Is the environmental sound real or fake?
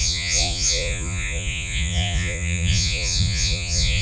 fake